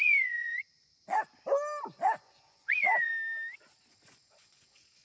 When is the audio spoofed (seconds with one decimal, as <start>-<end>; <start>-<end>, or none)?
0.0-1.2; 2.2-3.1; 3.9-5.0